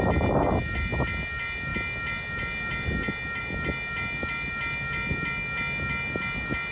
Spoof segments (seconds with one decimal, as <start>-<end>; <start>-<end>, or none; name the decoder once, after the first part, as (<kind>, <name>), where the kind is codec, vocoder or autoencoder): none